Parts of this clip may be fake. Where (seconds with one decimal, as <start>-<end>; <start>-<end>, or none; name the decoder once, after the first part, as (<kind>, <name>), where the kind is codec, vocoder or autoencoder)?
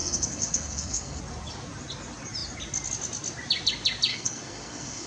0.0-1.2 (codec, SNAC); 4.1-5.1